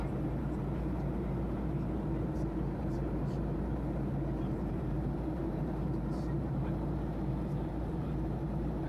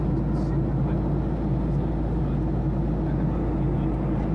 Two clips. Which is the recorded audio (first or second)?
second